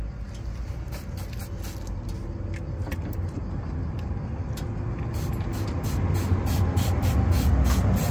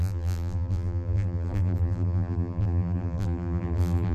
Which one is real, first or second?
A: first